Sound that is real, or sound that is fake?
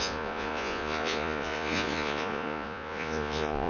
fake